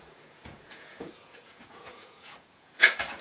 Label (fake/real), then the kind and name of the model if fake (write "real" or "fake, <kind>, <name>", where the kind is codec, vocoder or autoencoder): fake, vocoder, Vocos